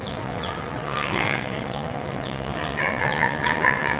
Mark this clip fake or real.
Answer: fake